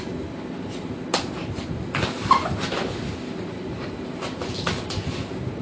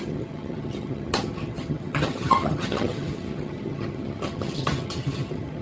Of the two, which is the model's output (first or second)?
second